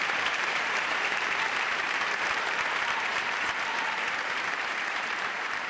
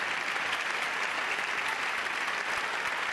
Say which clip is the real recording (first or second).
second